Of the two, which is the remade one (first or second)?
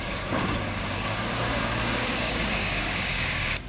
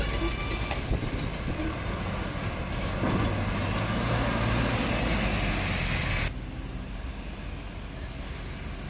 first